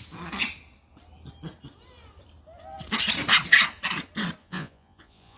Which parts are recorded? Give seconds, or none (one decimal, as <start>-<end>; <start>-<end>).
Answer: 0.0-4.4